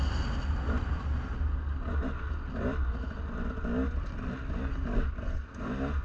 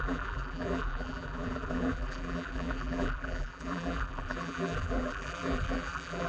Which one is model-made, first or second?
second